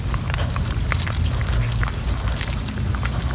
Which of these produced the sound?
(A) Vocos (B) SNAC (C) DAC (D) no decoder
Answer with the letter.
D